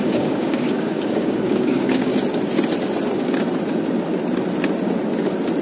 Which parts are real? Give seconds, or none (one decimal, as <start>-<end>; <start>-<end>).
2.1-5.6